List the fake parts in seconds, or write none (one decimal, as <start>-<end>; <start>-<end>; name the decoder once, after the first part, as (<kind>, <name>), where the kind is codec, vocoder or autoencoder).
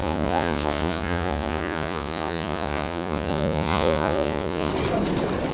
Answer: 0.0-4.7 (vocoder, Vocos)